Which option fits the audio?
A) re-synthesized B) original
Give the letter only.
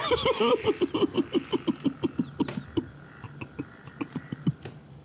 B